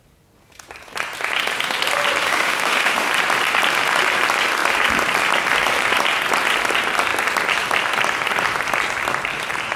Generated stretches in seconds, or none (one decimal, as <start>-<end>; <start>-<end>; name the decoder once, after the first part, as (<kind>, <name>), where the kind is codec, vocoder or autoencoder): 2.2-3.1 (autoencoder, DAC-VAE)